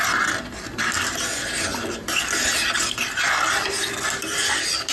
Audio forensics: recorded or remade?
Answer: recorded